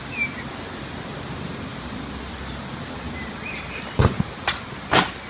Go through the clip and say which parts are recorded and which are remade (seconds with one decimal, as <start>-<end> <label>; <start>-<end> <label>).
0.0-5.3 recorded